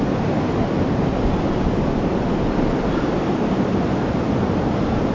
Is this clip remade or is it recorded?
recorded